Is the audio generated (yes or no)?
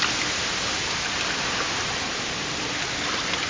no